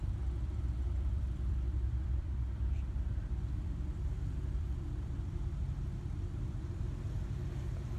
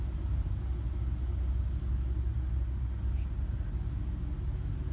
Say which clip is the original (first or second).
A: second